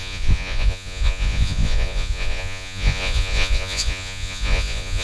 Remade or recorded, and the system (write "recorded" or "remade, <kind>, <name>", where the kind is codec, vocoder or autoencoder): remade, vocoder, Vocos